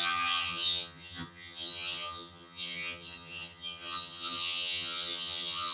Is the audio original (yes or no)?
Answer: no